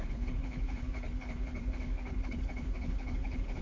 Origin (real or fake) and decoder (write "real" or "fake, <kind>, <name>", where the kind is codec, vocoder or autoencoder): fake, codec, HILCodec